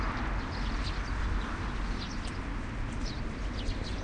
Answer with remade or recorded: recorded